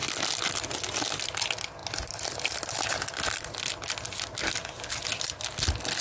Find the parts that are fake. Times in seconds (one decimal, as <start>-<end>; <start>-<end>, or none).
none